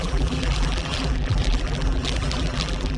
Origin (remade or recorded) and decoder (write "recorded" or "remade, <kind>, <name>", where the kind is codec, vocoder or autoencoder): remade, vocoder, BigVGAN v2